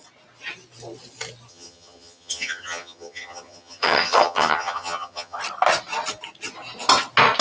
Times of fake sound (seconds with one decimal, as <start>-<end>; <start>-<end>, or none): 1.5-5.4